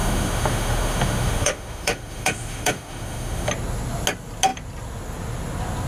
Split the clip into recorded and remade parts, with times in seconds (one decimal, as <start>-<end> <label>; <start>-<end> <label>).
0.0-3.5 remade; 3.5-5.9 recorded